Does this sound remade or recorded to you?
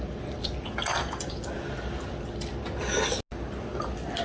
recorded